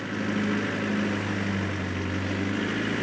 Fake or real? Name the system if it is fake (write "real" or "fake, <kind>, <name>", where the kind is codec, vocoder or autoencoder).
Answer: real